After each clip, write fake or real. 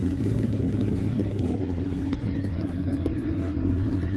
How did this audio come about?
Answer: fake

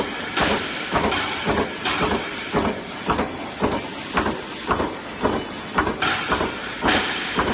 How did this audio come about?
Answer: real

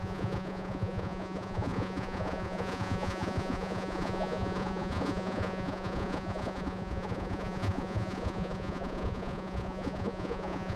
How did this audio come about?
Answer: fake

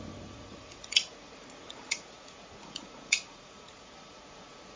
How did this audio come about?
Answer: fake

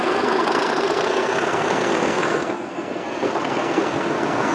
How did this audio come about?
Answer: fake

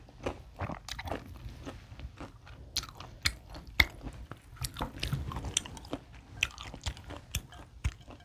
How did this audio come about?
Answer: real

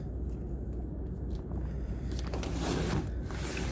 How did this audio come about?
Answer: real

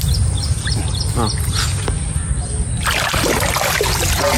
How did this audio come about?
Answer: real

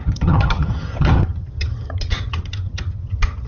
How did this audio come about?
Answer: fake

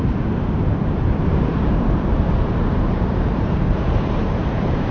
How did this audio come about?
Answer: fake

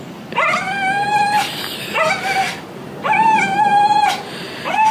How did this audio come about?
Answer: real